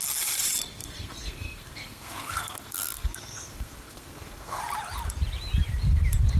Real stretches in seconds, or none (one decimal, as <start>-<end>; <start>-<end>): 0.0-0.8; 4.6-6.4